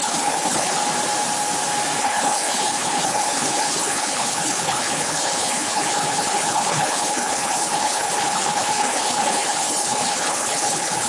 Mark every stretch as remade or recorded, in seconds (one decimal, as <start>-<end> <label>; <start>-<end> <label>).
0.0-0.8 remade; 0.8-2.0 recorded; 2.0-11.1 remade